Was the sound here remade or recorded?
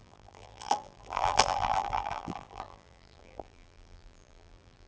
remade